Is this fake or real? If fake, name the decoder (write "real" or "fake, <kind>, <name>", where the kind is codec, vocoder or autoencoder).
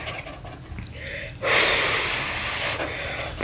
real